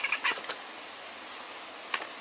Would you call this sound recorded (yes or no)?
yes